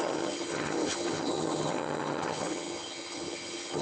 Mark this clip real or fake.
fake